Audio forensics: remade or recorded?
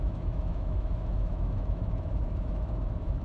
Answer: remade